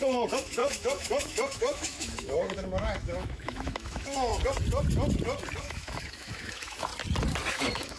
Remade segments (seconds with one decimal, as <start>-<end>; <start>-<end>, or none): 0.0-4.3; 5.6-6.9; 7.5-8.0